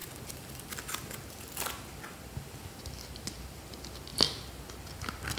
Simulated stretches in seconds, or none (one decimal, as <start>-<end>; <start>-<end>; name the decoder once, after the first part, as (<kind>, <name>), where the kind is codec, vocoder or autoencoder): none